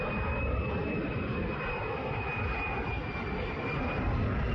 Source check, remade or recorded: recorded